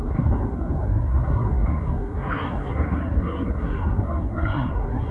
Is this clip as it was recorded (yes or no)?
no